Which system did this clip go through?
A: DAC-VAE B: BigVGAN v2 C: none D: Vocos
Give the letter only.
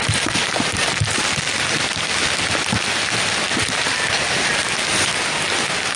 C